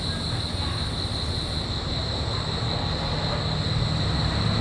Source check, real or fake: real